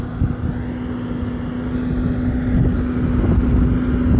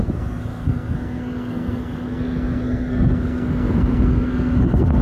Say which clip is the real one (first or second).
first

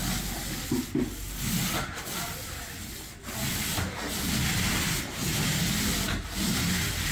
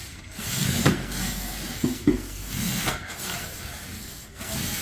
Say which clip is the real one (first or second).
first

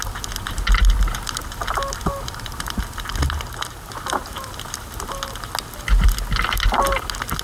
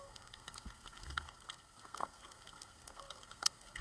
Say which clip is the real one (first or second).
first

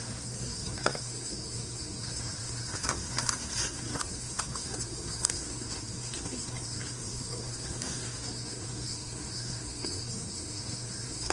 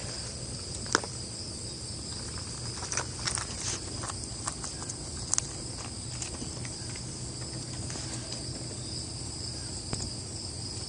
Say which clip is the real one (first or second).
second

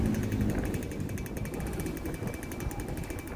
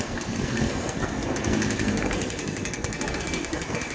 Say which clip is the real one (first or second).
first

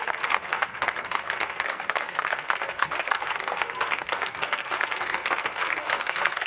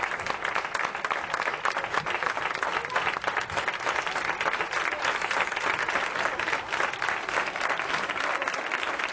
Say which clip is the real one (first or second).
second